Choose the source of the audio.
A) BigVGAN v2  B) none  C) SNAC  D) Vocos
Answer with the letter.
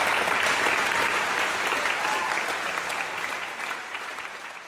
B